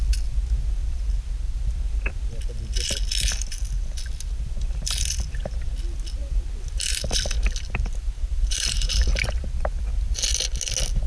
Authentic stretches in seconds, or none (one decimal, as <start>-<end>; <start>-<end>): 0.0-8.3; 9.2-11.1